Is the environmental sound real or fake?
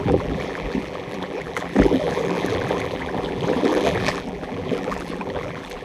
fake